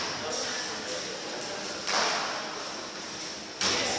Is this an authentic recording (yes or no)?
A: yes